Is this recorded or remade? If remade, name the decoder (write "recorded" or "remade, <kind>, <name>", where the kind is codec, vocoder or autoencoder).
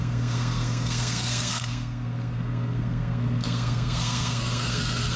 remade, codec, SNAC